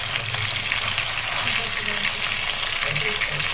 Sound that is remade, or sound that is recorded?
recorded